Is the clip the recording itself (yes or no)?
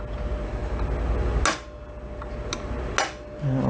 yes